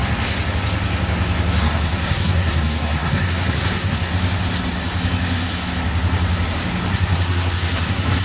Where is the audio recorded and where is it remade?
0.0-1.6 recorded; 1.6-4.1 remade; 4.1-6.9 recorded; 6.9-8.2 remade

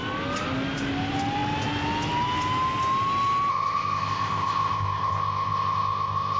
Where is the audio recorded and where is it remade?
0.0-3.5 recorded; 3.5-6.4 remade

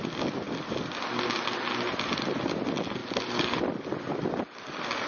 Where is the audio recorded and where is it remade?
0.0-5.1 recorded